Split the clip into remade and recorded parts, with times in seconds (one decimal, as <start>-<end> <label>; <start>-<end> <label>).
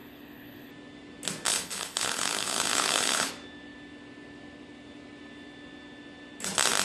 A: 0.0-0.7 remade; 0.7-1.5 recorded; 1.5-3.3 remade; 3.3-6.8 recorded